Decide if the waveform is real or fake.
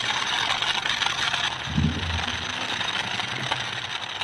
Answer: real